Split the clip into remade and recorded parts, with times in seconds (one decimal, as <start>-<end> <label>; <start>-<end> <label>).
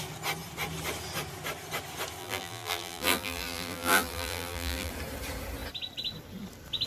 0.0-2.2 recorded; 2.2-4.9 remade; 4.9-6.9 recorded